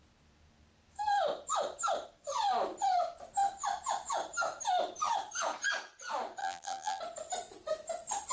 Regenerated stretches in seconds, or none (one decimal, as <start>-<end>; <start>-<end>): 6.4-7.0

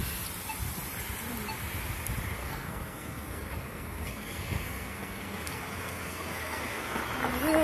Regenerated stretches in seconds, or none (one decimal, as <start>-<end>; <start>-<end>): 2.4-7.0

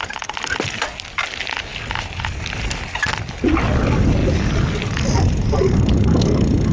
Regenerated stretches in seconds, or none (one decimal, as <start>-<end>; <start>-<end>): none

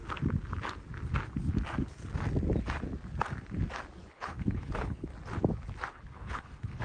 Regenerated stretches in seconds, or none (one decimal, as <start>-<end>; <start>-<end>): 4.1-5.1; 5.9-6.8

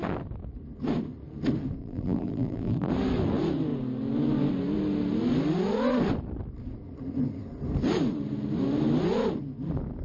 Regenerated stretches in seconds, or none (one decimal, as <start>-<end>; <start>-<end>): 1.8-2.9

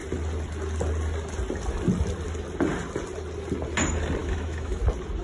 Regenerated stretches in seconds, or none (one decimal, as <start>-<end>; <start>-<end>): 4.2-4.8